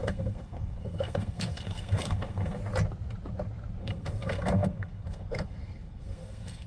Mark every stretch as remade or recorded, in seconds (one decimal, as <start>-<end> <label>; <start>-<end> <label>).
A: 0.0-2.6 remade; 2.6-3.8 recorded; 3.8-6.7 remade